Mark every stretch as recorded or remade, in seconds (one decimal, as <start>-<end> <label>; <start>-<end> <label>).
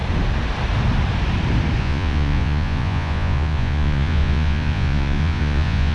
0.0-1.8 recorded; 1.8-5.9 remade